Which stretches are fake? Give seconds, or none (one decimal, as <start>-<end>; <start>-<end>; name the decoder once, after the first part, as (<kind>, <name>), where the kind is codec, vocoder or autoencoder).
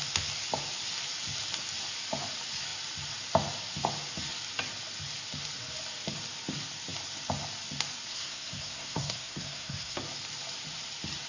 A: 8.1-10.0 (codec, SNAC)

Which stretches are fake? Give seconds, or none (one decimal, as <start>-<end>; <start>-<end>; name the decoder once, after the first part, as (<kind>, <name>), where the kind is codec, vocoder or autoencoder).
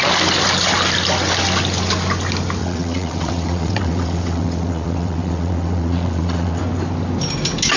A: 2.6-6.6 (vocoder, WaveNeXt)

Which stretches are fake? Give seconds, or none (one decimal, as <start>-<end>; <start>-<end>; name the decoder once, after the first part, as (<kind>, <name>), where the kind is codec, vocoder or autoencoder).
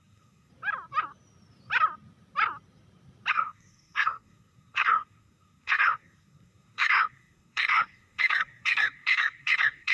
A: 0.0-0.5 (codec, SNAC); 3.3-9.9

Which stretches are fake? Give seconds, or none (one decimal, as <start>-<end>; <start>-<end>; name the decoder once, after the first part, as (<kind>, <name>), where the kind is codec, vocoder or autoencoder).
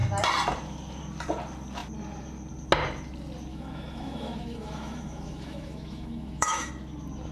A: 3.5-6.7 (autoencoder, DAC-VAE)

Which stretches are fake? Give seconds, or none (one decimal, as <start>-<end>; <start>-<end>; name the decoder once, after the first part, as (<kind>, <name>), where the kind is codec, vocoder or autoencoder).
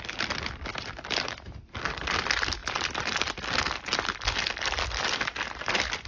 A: none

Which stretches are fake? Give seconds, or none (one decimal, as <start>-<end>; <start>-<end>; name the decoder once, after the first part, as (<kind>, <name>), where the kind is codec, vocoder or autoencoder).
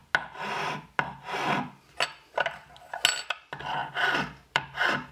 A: 3.1-5.1 (vocoder, BigVGAN v2)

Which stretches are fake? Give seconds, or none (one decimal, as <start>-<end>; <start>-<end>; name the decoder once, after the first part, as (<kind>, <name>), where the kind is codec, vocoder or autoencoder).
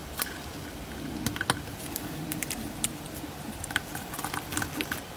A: 1.7-3.8 (vocoder, BigVGAN v2)